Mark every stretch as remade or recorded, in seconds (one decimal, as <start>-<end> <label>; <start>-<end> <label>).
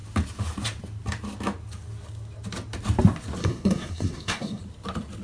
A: 0.0-3.4 recorded; 3.4-4.6 remade; 4.6-5.2 recorded